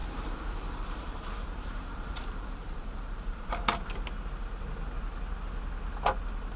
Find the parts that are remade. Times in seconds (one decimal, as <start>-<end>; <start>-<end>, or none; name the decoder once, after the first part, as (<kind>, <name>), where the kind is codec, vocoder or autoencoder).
0.0-3.5 (vocoder, BigVGAN v2)